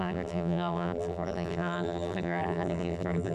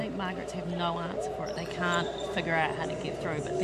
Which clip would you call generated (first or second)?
first